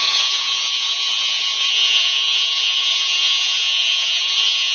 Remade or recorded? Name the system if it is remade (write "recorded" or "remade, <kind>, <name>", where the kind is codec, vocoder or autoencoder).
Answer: remade, vocoder, Vocos